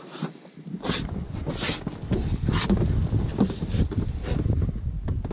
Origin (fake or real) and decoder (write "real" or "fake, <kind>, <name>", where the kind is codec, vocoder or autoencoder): real